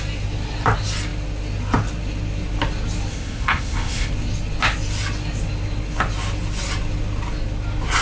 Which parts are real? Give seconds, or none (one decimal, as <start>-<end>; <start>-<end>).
0.0-3.1; 4.1-8.0

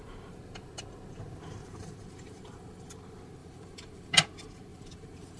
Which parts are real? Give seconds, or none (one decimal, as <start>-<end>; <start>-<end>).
0.0-1.6; 2.9-3.4; 4.1-4.7